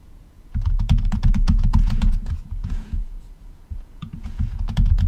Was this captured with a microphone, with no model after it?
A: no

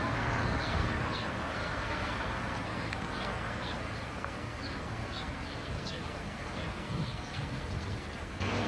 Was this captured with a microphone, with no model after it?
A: no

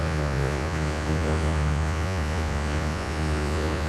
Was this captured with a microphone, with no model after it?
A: no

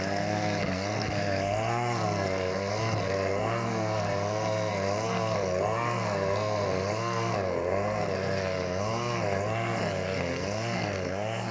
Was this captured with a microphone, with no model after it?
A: no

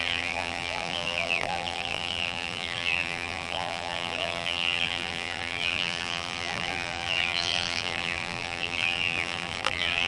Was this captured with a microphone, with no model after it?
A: no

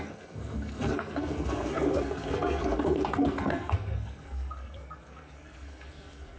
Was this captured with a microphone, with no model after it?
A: no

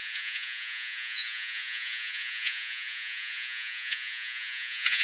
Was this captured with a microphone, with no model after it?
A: no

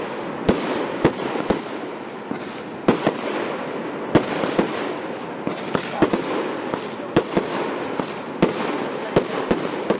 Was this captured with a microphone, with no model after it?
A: yes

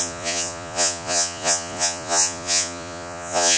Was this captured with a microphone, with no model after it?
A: no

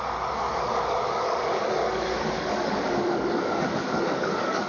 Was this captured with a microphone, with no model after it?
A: no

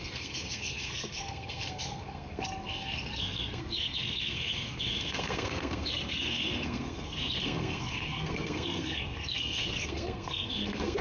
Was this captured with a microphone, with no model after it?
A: no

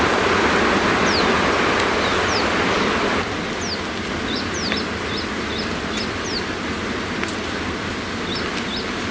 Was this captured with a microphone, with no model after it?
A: yes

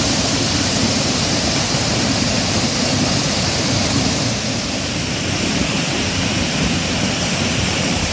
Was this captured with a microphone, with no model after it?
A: no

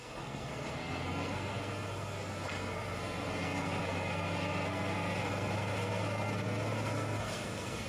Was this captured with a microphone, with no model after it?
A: no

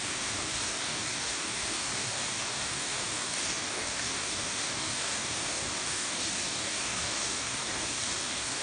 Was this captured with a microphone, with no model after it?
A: no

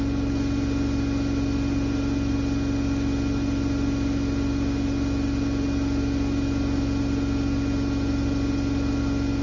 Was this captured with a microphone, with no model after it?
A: yes